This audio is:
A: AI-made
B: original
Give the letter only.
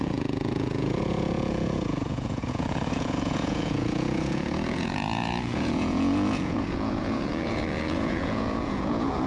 A